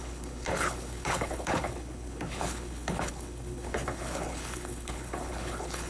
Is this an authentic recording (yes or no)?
no